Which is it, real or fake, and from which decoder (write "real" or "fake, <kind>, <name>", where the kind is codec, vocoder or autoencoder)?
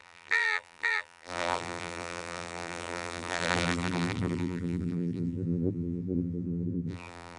fake, vocoder, BigVGAN v2